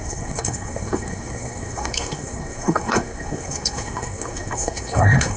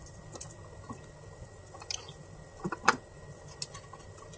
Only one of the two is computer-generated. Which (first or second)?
first